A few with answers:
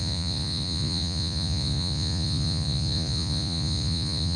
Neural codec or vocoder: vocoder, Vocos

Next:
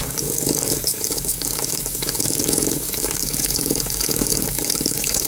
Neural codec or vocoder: codec, DAC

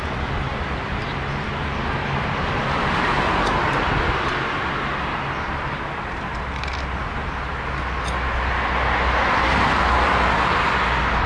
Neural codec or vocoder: none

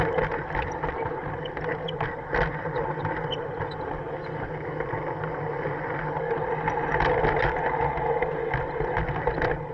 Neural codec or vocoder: none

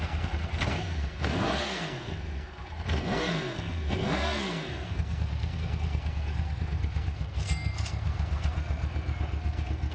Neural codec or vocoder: codec, SNAC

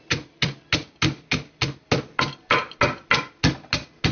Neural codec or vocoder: none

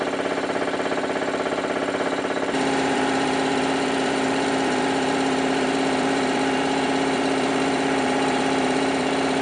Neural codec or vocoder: vocoder, BigVGAN v2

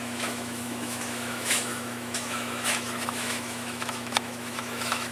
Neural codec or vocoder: autoencoder, DAC-VAE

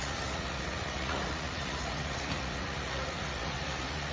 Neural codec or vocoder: vocoder, Vocos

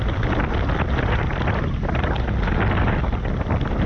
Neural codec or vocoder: none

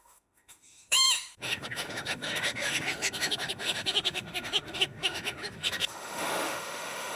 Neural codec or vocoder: autoencoder, DAC-VAE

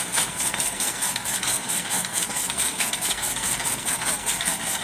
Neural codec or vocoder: codec, SNAC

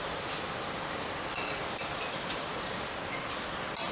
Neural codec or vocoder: none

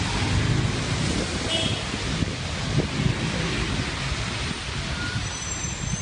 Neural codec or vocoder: none